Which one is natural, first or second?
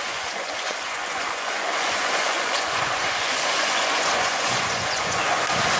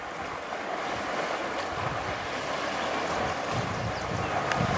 second